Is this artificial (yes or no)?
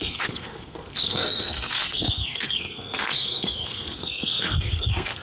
yes